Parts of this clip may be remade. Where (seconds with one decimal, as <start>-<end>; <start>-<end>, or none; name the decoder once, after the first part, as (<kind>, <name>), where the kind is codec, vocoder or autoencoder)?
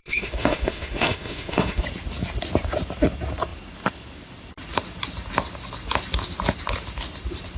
0.0-1.8 (autoencoder, DAC-VAE)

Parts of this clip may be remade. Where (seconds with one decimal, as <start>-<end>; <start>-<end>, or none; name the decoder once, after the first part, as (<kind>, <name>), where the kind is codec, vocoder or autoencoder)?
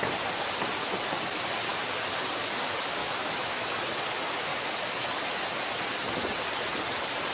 3.0-3.7 (autoencoder, DAC-VAE)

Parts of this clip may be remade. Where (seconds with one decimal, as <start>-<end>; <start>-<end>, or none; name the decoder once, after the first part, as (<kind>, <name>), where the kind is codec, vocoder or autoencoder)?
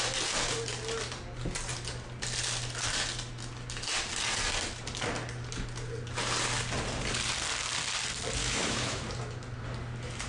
8.4-9.0 (autoencoder, DAC-VAE)